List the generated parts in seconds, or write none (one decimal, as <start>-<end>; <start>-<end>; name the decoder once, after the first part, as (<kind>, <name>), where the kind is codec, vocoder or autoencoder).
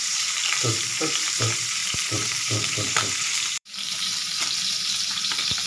0.0-5.7 (vocoder, BigVGAN v2)